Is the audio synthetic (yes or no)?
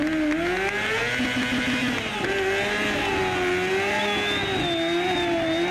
no